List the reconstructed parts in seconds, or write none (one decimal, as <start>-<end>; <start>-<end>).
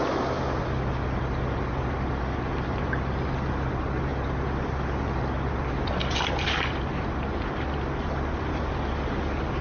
none